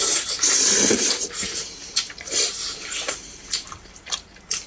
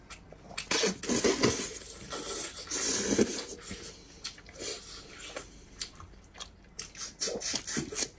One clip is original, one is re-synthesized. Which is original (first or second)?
second